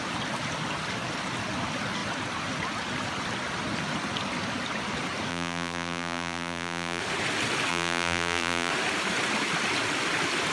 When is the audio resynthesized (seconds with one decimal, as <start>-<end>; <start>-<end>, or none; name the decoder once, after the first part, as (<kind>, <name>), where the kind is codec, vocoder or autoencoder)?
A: 5.3-7.0 (vocoder, BigVGAN v2); 7.7-8.7